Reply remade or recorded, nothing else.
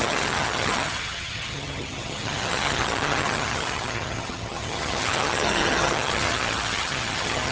remade